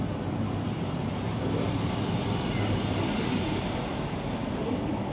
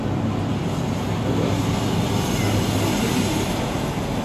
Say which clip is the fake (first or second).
first